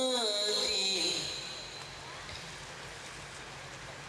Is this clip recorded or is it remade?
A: recorded